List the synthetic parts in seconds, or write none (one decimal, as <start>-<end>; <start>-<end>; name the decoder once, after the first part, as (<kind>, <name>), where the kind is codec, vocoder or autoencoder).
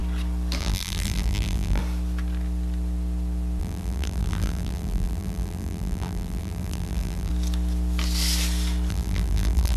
0.6-1.8 (vocoder, BigVGAN v2); 3.6-7.3; 8.9-9.8